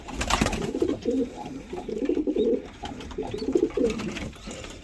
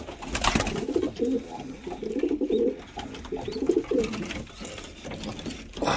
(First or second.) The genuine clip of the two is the second